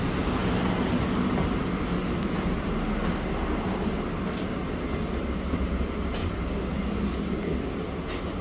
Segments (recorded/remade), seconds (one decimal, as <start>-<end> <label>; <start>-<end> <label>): 0.0-6.2 recorded; 6.2-6.9 remade; 6.9-8.4 recorded